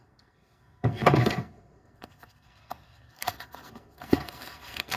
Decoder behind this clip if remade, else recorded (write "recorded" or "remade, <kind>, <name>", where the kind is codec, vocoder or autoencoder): remade, codec, SNAC